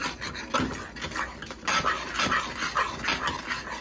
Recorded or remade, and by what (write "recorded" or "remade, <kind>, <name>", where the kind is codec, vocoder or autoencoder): recorded